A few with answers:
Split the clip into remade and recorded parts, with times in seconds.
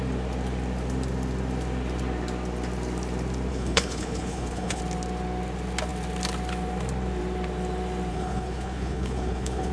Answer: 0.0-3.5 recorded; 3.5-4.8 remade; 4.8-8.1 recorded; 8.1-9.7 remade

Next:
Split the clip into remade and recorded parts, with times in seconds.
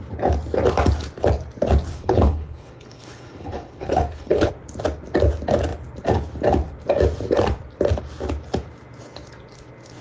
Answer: 0.0-1.9 recorded; 1.9-4.5 remade; 4.5-10.0 recorded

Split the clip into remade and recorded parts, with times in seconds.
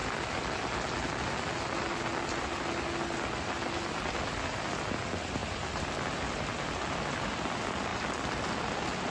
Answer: 0.0-9.1 recorded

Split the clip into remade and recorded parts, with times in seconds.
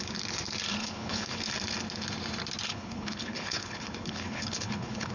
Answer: 0.0-0.8 recorded; 0.8-1.4 remade; 1.4-2.7 recorded; 2.7-5.1 remade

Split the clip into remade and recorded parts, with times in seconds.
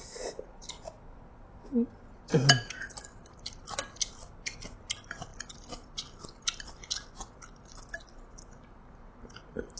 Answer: 0.0-9.8 recorded